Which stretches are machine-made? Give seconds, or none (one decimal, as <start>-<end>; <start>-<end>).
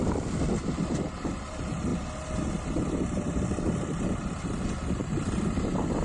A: 0.0-1.9; 3.3-6.0